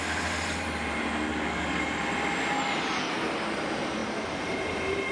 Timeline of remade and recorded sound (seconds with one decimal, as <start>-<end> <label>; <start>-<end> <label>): 0.0-1.3 recorded; 1.3-1.8 remade; 1.8-5.1 recorded